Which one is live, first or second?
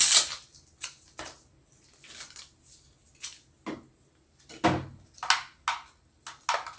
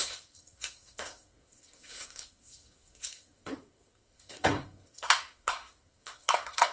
first